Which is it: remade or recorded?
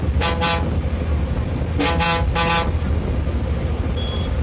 recorded